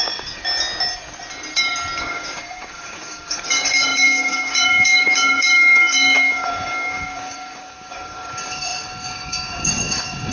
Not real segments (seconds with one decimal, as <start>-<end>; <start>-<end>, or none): 0.0-0.4; 2.0-10.3

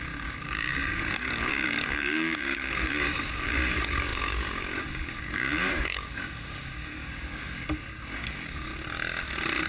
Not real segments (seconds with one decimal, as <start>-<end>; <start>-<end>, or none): 0.0-8.7

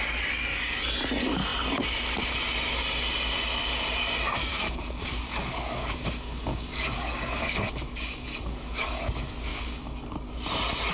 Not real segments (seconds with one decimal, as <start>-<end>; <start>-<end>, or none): 4.5-9.0; 9.5-10.3